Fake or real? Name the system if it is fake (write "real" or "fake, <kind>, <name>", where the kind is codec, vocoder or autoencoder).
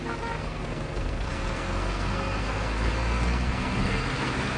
fake, codec, SNAC